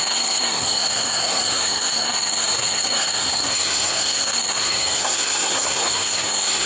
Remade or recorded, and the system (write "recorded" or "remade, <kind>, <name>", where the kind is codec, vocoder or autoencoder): remade, codec, SNAC